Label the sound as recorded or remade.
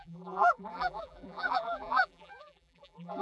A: remade